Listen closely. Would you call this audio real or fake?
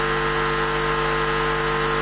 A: real